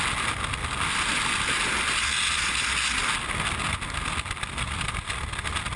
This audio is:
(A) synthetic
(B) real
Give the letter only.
B